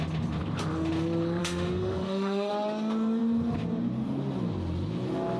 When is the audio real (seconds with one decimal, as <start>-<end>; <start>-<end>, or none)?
0.0-1.4; 2.5-5.4